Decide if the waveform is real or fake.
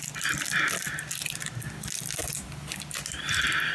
real